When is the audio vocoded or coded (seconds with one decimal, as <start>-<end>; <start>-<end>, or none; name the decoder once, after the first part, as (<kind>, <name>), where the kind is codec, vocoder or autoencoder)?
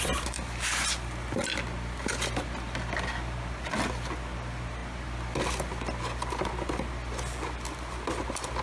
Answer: none